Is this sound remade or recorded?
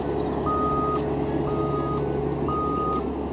recorded